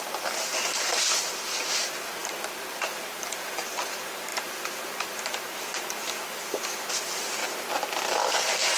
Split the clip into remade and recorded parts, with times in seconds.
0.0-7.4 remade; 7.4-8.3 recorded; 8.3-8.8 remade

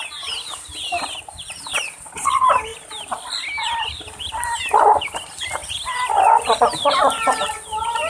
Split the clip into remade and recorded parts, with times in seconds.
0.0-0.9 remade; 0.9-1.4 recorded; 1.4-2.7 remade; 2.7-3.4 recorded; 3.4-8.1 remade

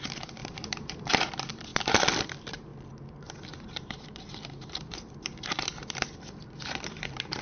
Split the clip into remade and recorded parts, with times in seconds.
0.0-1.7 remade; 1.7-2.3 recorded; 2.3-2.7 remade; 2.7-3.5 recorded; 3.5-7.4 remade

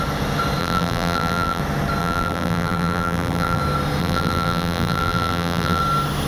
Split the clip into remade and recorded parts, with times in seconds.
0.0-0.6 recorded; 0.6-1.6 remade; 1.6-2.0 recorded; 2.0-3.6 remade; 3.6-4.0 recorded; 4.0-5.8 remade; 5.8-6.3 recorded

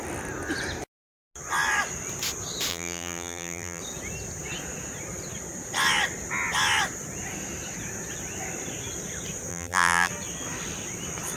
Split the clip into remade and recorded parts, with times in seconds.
0.0-2.7 recorded; 2.7-3.8 remade; 3.8-9.5 recorded; 9.5-10.1 remade; 10.1-11.4 recorded

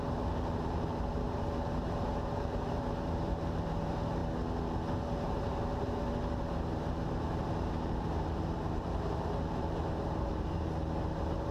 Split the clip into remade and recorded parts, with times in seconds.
0.0-4.2 remade; 4.2-5.0 recorded; 5.0-11.5 remade